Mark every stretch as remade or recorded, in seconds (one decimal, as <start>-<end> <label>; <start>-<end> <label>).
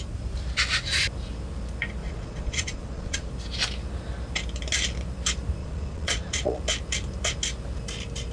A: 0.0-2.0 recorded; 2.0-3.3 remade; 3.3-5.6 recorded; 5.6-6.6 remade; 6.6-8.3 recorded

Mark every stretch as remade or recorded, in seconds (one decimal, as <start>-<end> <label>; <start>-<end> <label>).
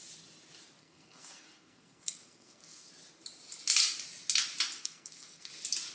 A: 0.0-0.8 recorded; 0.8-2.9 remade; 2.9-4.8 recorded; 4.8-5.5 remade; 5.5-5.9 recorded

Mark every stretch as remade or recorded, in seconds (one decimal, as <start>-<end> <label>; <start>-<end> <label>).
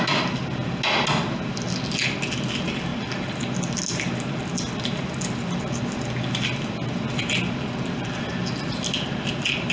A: 0.0-9.7 recorded